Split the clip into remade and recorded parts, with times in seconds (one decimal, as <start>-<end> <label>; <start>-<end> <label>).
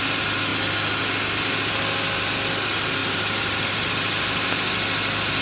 0.0-3.0 recorded; 3.0-3.9 remade; 3.9-5.4 recorded